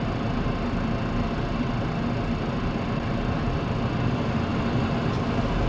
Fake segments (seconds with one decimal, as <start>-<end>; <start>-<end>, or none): none